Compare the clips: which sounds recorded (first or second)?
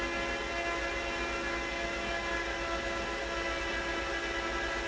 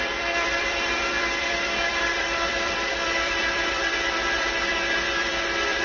first